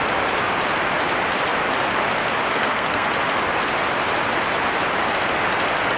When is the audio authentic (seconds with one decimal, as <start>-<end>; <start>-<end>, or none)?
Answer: 0.0-2.5; 3.1-6.0

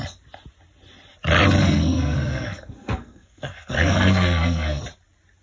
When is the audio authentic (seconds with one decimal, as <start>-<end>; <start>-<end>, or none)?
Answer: 0.0-1.6; 4.8-5.4

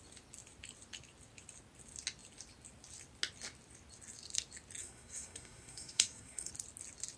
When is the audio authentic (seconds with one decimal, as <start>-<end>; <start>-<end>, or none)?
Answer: 0.0-4.8; 6.5-7.2

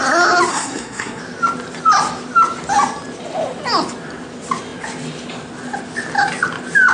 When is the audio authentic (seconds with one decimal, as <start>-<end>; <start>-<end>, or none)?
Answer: 0.0-0.5; 1.2-6.9

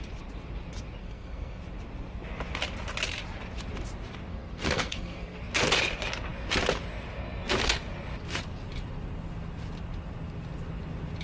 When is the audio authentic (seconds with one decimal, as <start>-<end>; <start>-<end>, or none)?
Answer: 0.0-1.0; 1.6-4.3; 5.4-11.2

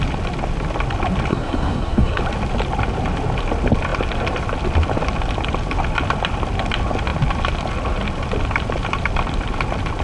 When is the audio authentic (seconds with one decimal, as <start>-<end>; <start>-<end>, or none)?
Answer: 0.0-1.3; 2.2-10.0

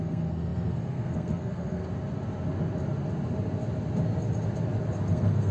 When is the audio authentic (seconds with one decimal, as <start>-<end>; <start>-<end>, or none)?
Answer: 1.8-5.1